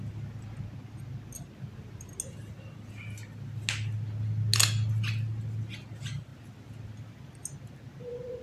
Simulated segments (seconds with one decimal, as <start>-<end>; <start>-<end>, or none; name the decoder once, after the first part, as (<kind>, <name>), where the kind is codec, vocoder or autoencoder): none